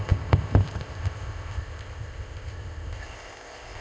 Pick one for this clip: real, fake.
fake